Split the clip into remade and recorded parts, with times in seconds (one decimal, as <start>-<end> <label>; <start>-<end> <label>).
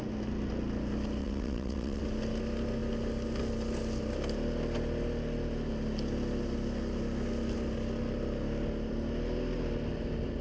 0.0-1.2 recorded; 1.2-2.0 remade; 2.0-10.4 recorded